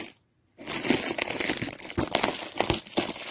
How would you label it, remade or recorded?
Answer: recorded